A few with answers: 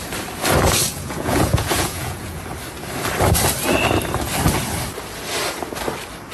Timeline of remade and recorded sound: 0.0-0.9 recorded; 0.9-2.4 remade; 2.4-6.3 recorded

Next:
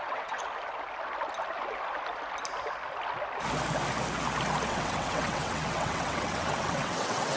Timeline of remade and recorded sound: 0.0-0.4 remade; 0.4-4.7 recorded; 4.7-7.4 remade

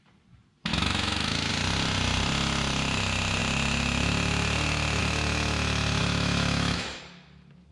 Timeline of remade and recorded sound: 0.0-0.7 recorded; 0.7-1.5 remade; 1.5-6.0 recorded; 6.0-7.0 remade; 7.0-7.7 recorded

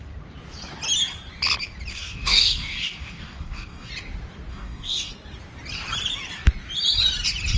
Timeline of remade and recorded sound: 0.0-1.9 recorded; 1.9-3.9 remade; 3.9-4.5 recorded; 4.5-5.1 remade; 5.1-7.6 recorded